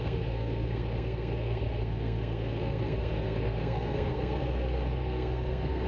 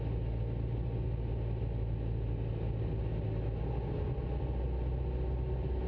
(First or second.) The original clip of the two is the second